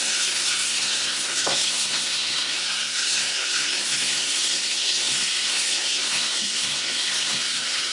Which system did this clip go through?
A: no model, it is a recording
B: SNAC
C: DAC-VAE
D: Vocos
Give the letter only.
B